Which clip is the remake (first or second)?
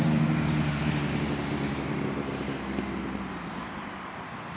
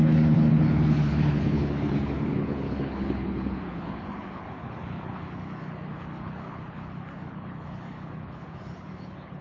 second